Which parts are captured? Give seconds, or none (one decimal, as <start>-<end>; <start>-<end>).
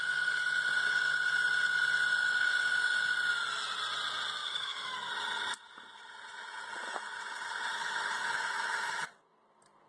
0.0-2.2; 3.1-4.4; 5.1-7.8; 9.1-9.9